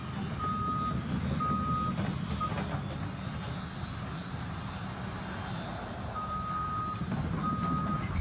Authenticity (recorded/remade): recorded